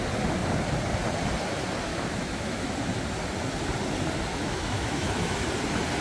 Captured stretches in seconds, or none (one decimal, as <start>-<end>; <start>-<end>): 0.0-1.9; 2.7-4.3; 5.5-6.0